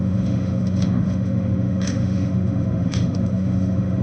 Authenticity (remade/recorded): remade